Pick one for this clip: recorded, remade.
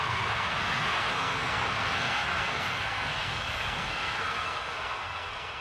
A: remade